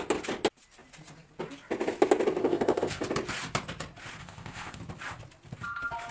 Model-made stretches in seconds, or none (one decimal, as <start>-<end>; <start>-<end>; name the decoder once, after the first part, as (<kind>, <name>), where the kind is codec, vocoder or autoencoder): 2.4-3.0 (codec, ZipCodec); 4.2-4.8